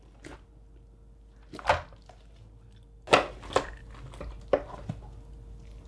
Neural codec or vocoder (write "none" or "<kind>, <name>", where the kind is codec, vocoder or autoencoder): none